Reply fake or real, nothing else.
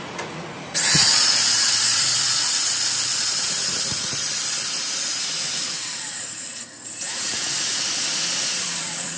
fake